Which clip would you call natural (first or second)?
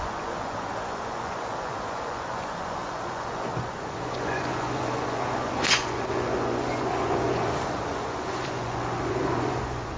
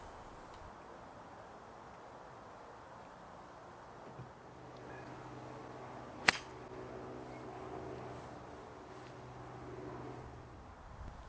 second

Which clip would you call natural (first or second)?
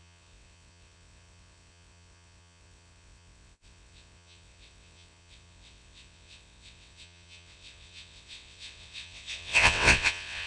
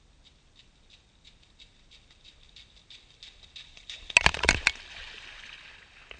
second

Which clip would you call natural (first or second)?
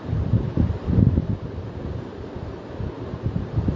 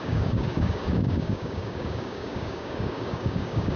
first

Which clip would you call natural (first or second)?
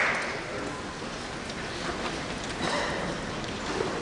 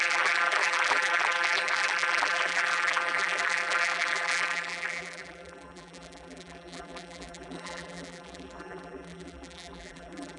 first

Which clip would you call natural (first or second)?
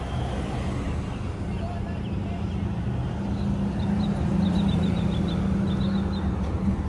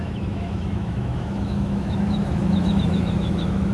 first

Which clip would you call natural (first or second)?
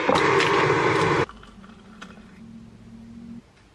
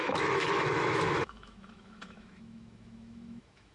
first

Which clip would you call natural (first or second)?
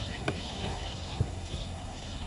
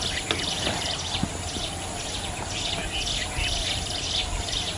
second